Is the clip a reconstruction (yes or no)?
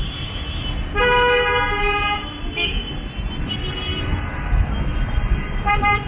no